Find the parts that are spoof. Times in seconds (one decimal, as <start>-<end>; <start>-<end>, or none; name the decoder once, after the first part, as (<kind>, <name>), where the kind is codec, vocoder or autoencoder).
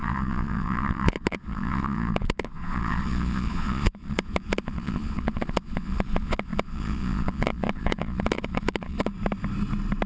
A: 0.0-9.1 (vocoder, Vocos)